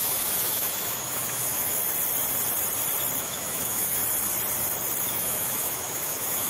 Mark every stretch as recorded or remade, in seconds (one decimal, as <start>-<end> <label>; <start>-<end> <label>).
0.0-1.8 remade; 1.8-3.2 recorded; 3.2-4.0 remade; 4.0-5.0 recorded; 5.0-6.5 remade